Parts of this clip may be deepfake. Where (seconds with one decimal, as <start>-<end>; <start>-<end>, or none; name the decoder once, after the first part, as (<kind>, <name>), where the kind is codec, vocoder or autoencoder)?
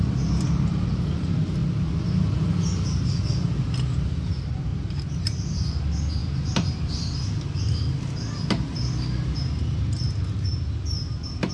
4.7-5.8 (vocoder, BigVGAN v2); 6.2-6.8